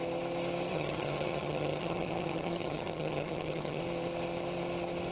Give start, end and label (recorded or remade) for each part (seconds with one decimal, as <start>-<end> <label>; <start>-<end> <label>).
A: 0.0-0.7 recorded; 0.7-3.8 remade; 3.8-5.1 recorded